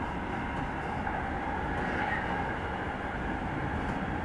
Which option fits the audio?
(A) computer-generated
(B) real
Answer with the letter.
B